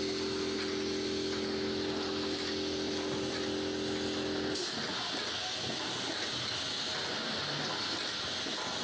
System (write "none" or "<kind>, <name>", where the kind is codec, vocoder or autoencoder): none